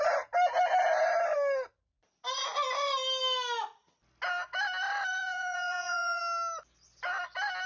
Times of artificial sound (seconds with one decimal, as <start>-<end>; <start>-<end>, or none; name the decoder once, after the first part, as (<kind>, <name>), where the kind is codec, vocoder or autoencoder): 5.1-6.2 (vocoder, Vocos)